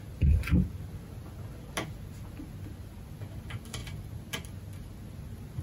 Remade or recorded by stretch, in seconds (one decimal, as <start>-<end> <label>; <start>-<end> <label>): 0.0-5.6 recorded